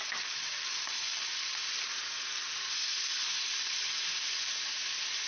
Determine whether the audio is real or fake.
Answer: real